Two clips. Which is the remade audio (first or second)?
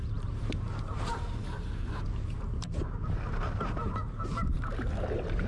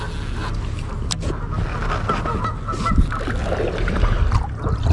first